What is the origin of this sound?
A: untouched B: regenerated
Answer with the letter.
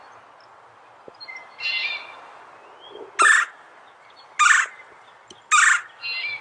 A